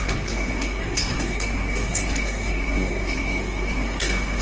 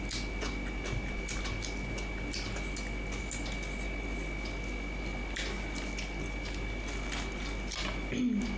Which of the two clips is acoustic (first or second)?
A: second